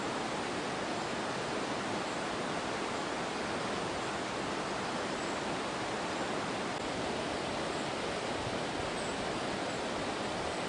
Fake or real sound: real